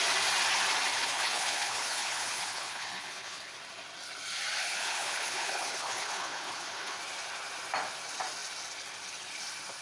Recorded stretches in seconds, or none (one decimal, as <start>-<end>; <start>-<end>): 0.0-0.9; 3.5-4.6; 7.0-9.8